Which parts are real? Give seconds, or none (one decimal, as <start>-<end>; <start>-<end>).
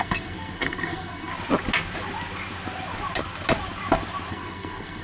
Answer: 1.3-4.3